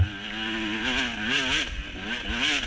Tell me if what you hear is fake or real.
real